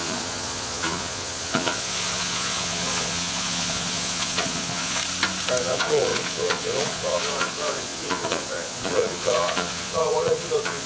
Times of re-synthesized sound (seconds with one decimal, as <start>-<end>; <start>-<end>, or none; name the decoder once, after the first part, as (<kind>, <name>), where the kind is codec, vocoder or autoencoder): 0.0-5.0 (vocoder, Vocos); 5.6-10.9